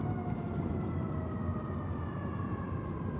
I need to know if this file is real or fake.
real